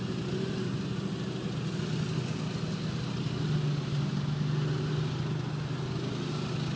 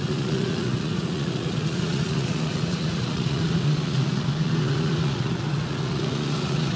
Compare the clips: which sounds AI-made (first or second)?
second